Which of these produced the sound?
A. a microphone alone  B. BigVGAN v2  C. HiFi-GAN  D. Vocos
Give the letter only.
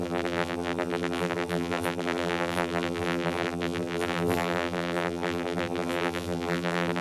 B